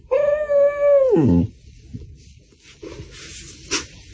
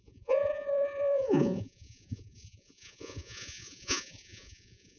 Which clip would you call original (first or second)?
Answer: first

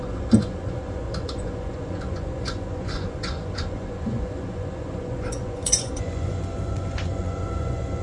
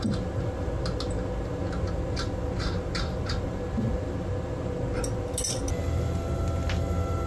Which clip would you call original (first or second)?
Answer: second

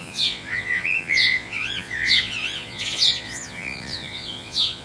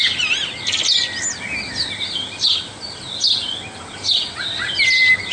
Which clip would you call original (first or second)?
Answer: second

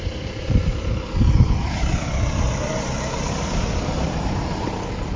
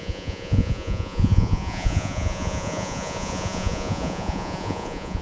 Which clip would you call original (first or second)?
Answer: first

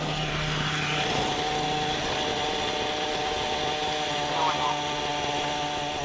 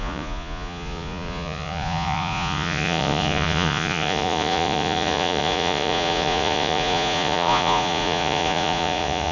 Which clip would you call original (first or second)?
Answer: first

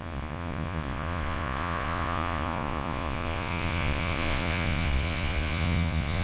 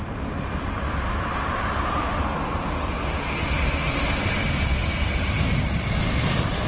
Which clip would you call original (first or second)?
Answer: second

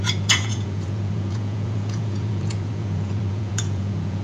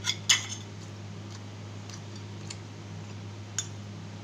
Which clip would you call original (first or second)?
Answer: second